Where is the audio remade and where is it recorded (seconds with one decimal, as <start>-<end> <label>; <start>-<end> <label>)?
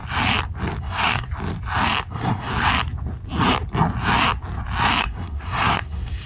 0.0-0.8 recorded; 0.8-1.3 remade; 1.3-2.1 recorded; 2.1-2.5 remade; 2.5-5.0 recorded; 5.0-6.3 remade